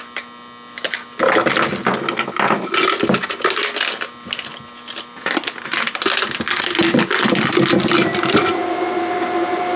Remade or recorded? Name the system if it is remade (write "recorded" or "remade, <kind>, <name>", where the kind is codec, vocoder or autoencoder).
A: recorded